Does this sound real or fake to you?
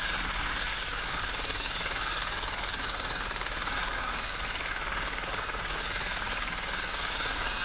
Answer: fake